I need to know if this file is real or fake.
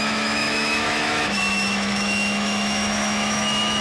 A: fake